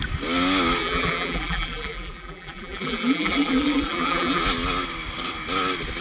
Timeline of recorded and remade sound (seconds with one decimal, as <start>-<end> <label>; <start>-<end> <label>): 0.0-0.8 recorded; 0.8-4.4 remade; 4.4-6.0 recorded